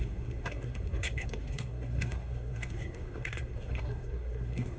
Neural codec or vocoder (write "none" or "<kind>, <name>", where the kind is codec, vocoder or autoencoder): codec, SNAC